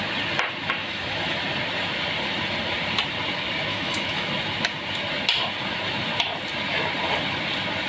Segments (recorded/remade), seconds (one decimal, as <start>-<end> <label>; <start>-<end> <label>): 0.0-0.8 recorded; 0.8-1.4 remade; 1.4-3.7 recorded; 3.7-4.3 remade; 4.3-7.9 recorded

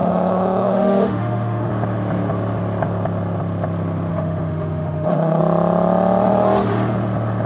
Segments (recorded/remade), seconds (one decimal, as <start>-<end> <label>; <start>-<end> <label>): 0.0-1.7 remade; 1.7-4.1 recorded; 4.1-5.4 remade; 5.4-7.5 recorded